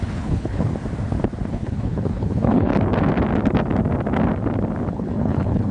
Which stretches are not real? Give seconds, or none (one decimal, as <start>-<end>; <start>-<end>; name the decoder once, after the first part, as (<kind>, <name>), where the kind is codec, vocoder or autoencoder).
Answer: 0.0-0.7 (codec, HILCodec); 1.5-2.7; 4.9-5.7